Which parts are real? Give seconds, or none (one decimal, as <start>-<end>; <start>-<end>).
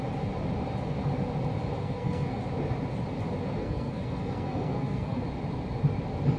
0.0-1.8; 2.4-3.6; 5.2-6.4